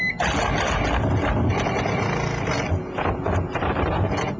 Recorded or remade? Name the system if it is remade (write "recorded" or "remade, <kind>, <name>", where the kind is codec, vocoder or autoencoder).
recorded